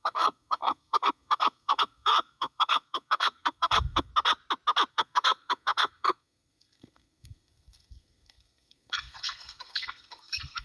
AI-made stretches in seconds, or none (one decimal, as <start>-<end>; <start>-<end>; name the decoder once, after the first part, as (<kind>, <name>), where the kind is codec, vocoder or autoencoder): 0.0-4.1 (codec, SNAC); 4.9-10.6